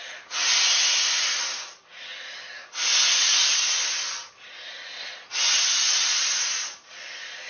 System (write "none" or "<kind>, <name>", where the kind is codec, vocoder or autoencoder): none